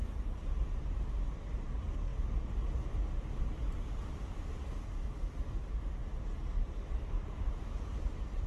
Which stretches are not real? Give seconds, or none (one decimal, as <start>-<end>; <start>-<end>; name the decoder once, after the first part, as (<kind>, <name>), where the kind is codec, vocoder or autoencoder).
none